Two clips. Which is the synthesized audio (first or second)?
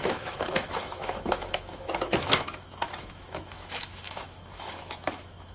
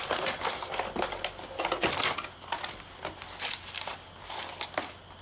first